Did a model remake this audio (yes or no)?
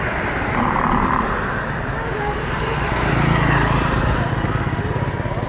no